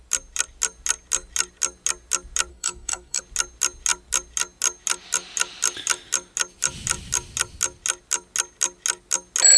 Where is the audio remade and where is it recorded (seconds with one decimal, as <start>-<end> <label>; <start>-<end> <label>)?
0.0-2.5 recorded; 2.5-3.2 remade; 3.2-9.6 recorded